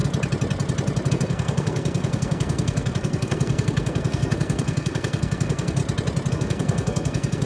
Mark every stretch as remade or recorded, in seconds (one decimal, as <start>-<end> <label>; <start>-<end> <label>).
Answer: 0.0-1.1 recorded; 1.1-5.8 remade; 5.8-6.3 recorded; 6.3-7.5 remade